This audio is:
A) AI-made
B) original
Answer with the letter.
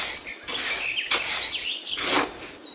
B